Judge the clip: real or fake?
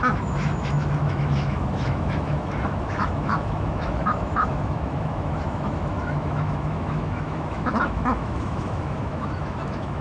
fake